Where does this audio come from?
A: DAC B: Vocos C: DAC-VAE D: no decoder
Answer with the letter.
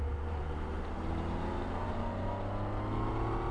D